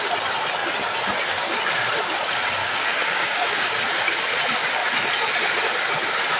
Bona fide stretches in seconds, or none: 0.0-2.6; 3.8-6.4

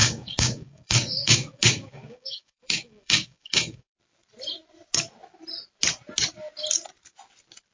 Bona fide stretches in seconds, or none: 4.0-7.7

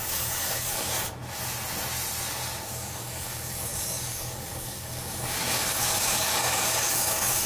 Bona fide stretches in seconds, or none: 1.2-2.7